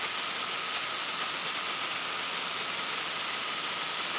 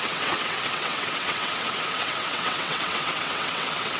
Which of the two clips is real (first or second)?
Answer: first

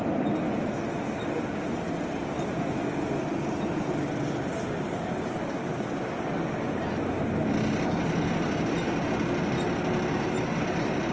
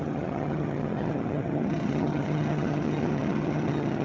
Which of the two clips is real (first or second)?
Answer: first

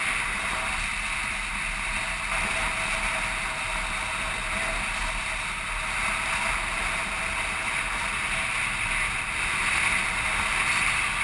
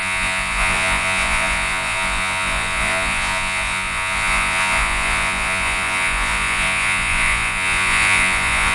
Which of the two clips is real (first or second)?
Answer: first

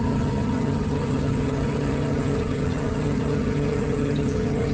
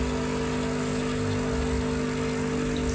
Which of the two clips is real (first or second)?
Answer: second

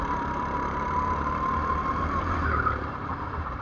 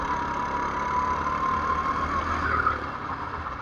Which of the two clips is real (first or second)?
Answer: second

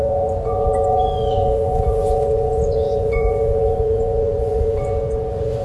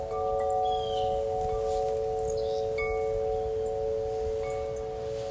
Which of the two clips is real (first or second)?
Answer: second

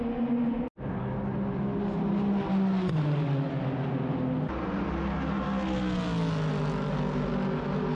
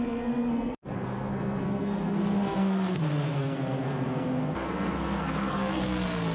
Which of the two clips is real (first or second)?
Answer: first